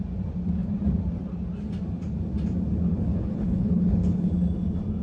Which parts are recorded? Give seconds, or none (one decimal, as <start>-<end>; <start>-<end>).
0.0-2.9; 4.3-5.0